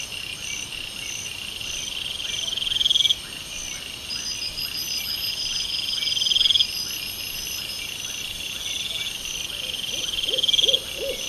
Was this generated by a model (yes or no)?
no